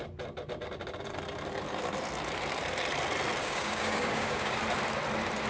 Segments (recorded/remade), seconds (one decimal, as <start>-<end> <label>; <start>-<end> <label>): 0.0-3.4 recorded; 3.4-4.6 remade; 4.6-5.5 recorded